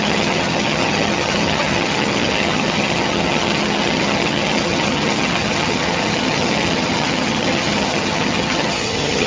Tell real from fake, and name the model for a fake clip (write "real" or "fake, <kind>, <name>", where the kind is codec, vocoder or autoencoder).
fake, vocoder, HiFi-GAN